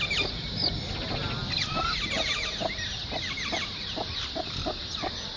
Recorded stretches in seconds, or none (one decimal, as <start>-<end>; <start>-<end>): 0.0-1.4; 4.6-5.4